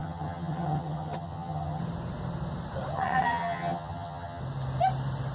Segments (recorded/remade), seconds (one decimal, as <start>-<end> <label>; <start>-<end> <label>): 0.0-1.8 remade; 1.8-2.9 recorded; 2.9-4.4 remade; 4.4-5.3 recorded

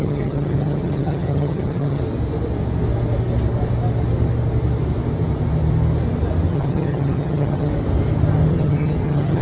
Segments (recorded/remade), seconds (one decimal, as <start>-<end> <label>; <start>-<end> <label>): 0.0-2.0 remade; 2.0-6.5 recorded; 6.5-7.7 remade; 7.7-8.5 recorded; 8.5-9.4 remade

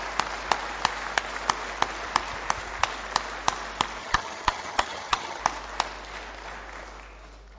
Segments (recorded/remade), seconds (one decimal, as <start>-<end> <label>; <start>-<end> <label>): 0.0-4.0 recorded; 4.0-5.4 remade; 5.4-7.6 recorded

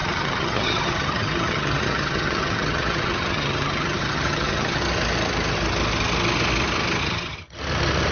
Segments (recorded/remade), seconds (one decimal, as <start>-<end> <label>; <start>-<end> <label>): 0.0-4.8 remade; 4.8-7.0 recorded; 7.0-7.6 remade; 7.6-8.1 recorded

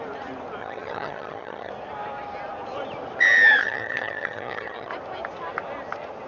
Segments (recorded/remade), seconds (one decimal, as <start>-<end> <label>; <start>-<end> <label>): 0.0-0.6 recorded; 0.6-1.7 remade; 1.7-3.6 recorded; 3.6-4.9 remade; 4.9-6.3 recorded

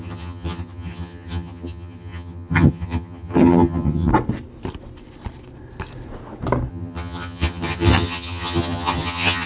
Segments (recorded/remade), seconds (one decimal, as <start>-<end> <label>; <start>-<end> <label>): 0.0-4.1 remade; 4.1-6.7 recorded; 6.7-9.5 remade